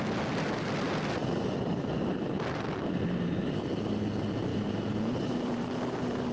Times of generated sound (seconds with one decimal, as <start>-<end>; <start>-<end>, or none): 4.5-5.6